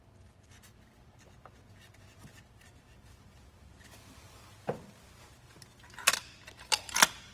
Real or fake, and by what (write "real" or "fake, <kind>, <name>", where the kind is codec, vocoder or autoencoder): real